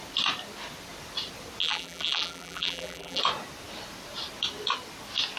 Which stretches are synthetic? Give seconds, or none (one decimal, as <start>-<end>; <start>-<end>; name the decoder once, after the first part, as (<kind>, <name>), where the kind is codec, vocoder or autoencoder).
1.6-3.2 (vocoder, BigVGAN v2)